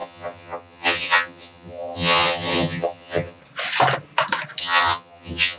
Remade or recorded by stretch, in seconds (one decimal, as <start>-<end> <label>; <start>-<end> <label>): 0.0-3.4 remade; 3.4-4.6 recorded; 4.6-5.6 remade